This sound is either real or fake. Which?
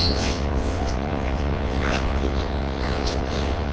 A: fake